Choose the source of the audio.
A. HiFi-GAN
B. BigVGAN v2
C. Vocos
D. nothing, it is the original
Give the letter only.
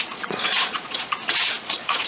C